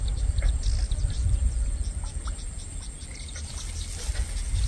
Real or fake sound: real